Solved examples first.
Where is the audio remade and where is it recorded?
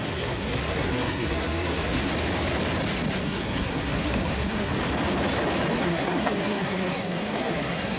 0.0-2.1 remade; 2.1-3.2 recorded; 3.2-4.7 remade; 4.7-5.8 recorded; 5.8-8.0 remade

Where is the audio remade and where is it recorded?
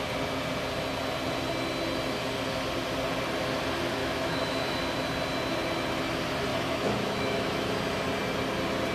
0.0-4.0 recorded; 4.0-4.8 remade; 4.8-6.5 recorded; 6.5-7.7 remade; 7.7-8.9 recorded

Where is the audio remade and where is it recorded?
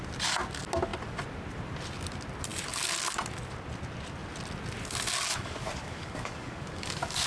0.0-5.3 recorded; 5.3-7.3 remade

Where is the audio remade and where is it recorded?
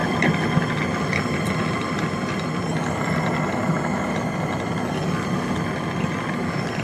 0.0-6.8 recorded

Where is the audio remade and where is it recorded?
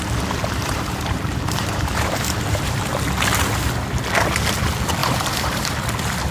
0.0-0.4 recorded; 0.4-2.8 remade; 2.8-5.0 recorded; 5.0-5.7 remade; 5.7-6.3 recorded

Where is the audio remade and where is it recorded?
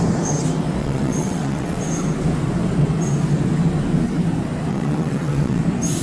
0.0-0.8 recorded; 0.8-1.8 remade; 1.8-4.7 recorded; 4.7-5.6 remade; 5.6-6.0 recorded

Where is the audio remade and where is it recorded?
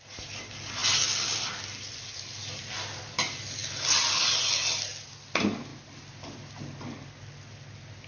0.0-8.1 recorded